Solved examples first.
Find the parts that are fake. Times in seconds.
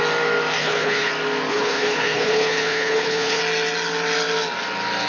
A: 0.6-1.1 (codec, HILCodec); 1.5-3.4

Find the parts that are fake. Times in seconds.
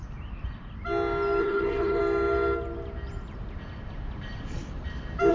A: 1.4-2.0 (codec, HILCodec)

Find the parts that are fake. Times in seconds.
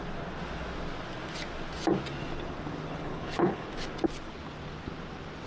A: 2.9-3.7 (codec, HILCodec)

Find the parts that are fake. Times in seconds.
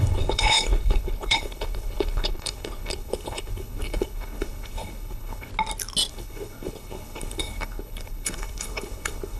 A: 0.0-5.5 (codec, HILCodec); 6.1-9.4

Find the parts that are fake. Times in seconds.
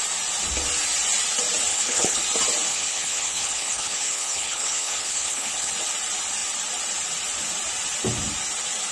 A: 1.7-2.2 (codec, HILCodec); 2.7-5.7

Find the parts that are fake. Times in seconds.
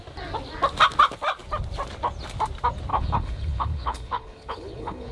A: 2.9-5.1 (codec, HILCodec)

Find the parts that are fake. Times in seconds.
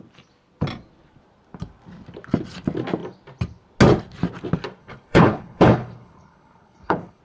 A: 4.8-7.2 (codec, HILCodec)